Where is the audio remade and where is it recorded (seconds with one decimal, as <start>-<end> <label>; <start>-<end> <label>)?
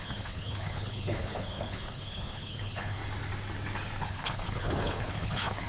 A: 0.0-3.0 remade; 3.0-4.1 recorded; 4.1-5.7 remade